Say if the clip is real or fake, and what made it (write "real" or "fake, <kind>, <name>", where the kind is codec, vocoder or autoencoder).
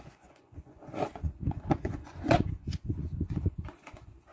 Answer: fake, vocoder, Vocos